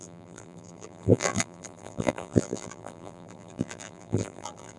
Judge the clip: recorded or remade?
remade